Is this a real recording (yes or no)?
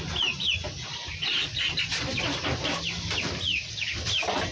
yes